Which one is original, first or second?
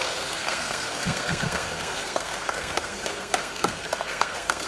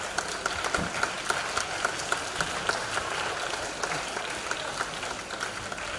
second